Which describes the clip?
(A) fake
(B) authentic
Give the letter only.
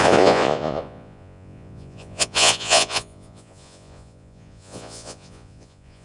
A